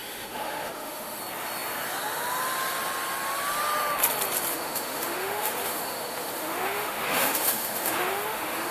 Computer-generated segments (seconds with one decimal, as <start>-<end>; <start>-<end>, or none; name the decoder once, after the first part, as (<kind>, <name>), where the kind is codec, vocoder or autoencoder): 0.0-1.2 (autoencoder, DAC-VAE); 4.5-8.7